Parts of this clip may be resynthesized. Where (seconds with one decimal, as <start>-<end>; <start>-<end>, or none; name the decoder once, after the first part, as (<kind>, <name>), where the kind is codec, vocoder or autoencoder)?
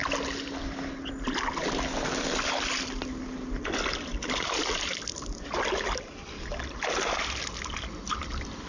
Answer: none